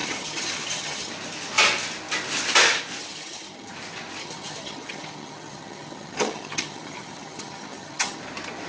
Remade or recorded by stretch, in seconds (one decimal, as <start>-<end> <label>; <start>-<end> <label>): 0.0-1.1 remade; 1.1-3.0 recorded; 3.0-3.7 remade; 3.7-4.2 recorded; 4.2-8.2 remade; 8.2-8.7 recorded